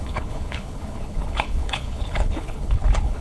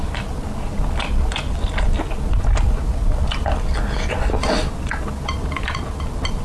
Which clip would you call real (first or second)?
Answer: second